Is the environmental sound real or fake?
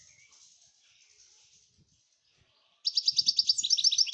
real